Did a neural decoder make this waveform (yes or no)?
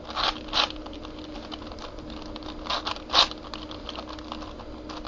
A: no